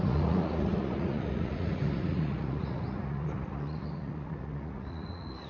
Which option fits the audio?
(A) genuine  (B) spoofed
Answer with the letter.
B